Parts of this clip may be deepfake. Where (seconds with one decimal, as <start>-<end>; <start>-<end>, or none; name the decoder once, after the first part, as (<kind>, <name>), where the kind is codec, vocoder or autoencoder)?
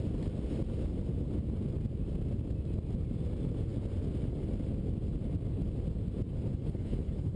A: 6.5-7.4 (codec, HILCodec)